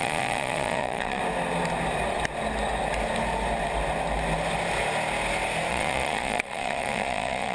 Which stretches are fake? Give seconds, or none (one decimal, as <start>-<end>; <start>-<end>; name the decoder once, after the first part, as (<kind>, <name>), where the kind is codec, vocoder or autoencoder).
0.0-1.2 (vocoder, Vocos); 5.7-7.5